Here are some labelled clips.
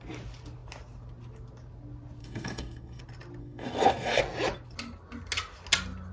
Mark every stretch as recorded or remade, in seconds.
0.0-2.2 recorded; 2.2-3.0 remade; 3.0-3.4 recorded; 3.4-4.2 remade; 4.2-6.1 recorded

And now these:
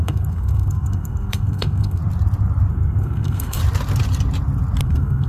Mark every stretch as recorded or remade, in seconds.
0.0-2.0 remade; 2.0-2.7 recorded; 2.7-3.6 remade; 3.6-4.8 recorded; 4.8-5.3 remade

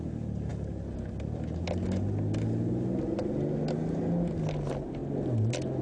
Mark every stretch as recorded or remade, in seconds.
0.0-5.8 recorded

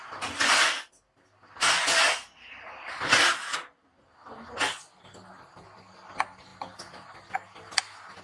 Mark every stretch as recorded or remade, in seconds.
0.0-8.2 recorded